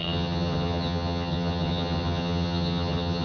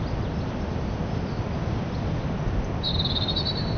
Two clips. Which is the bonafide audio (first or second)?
second